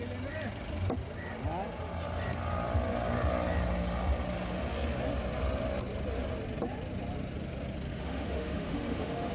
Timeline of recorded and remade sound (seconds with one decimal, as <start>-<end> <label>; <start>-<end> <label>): 0.0-7.9 recorded; 7.9-9.3 remade